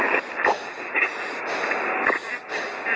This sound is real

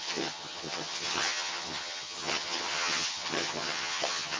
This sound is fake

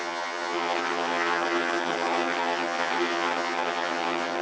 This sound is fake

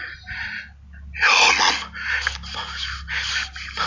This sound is real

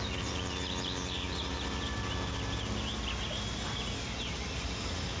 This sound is real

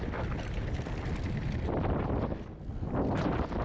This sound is real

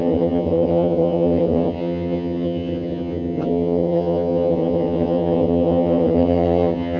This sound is fake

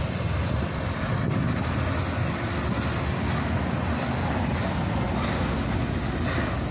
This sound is real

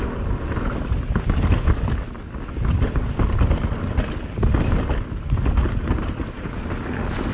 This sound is real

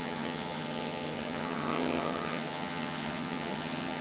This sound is fake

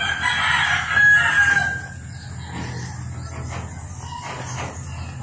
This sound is real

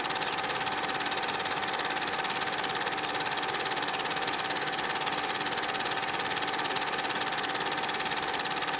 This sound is real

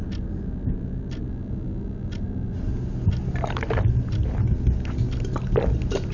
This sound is real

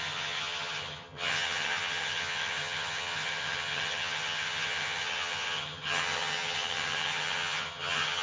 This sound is fake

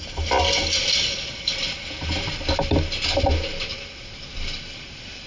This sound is real